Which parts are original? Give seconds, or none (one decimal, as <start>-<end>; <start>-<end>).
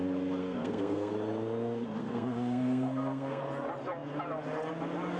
0.0-0.4; 1.1-2.0; 3.4-5.2